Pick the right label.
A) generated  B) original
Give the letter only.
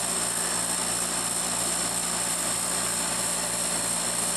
A